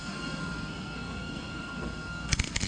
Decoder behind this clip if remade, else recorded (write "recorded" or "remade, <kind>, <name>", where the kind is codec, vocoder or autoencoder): remade, codec, SNAC